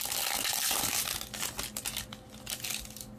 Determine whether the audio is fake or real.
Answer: real